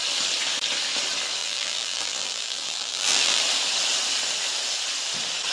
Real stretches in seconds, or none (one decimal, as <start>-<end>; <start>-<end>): 0.0-1.4; 3.4-5.5